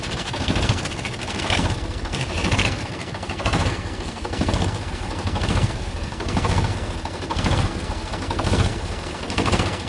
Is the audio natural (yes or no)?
no